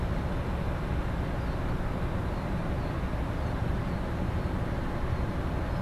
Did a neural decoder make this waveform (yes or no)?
no